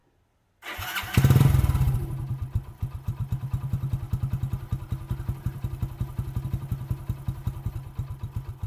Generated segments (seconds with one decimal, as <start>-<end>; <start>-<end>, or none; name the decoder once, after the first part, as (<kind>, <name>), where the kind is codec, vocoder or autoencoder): none

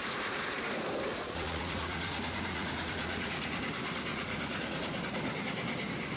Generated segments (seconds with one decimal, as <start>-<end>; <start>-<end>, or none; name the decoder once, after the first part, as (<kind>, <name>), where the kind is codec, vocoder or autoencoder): 1.1-3.6 (vocoder, Vocos); 4.1-5.0

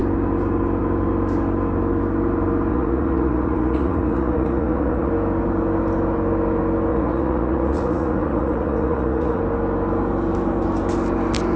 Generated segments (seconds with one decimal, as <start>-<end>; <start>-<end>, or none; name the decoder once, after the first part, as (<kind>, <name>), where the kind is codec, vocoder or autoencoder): 2.7-5.1 (vocoder, Vocos); 6.9-9.4

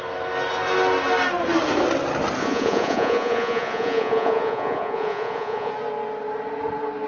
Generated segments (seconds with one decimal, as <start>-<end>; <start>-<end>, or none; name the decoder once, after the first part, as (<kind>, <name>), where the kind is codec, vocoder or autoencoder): 2.4-5.7 (vocoder, Vocos)